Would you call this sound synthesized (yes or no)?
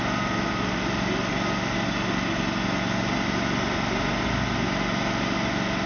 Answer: no